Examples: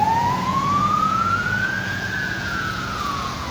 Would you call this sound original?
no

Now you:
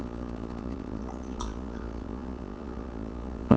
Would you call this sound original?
no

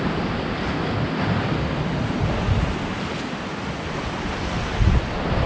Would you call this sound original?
yes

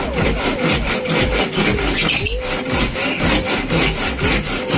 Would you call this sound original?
yes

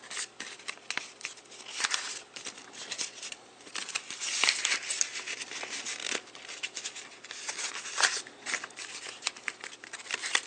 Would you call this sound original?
yes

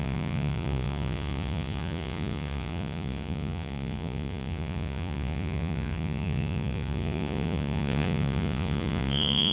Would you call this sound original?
no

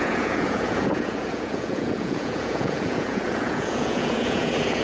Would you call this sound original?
no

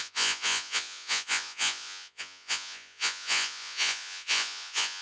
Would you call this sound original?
no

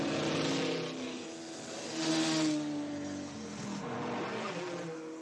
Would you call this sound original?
yes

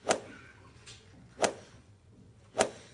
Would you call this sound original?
no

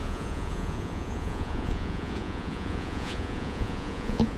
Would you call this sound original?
no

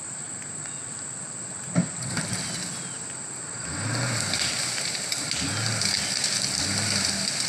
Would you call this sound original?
yes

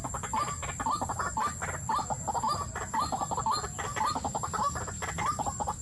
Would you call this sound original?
yes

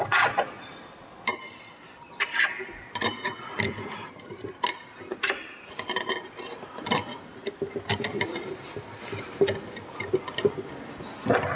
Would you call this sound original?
yes